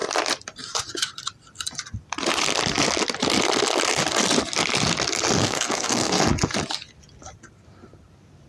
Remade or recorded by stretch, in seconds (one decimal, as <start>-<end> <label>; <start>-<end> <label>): 0.0-5.4 recorded; 5.4-6.2 remade; 6.2-8.5 recorded